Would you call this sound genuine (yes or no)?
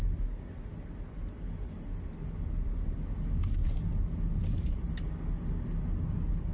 yes